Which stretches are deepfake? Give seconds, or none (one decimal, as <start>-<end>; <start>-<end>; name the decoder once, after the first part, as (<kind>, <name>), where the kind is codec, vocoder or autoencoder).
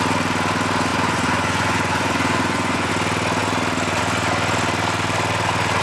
0.9-2.9 (vocoder, Vocos)